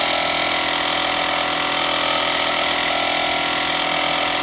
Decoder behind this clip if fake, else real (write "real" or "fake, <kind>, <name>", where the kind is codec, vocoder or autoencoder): real